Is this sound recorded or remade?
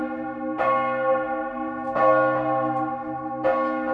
recorded